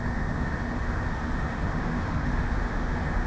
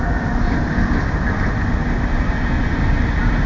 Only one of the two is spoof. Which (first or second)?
first